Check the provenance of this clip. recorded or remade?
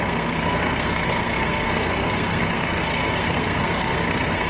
remade